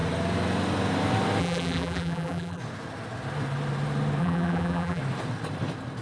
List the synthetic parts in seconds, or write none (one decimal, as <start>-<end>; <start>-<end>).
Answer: 1.4-2.6; 4.2-5.0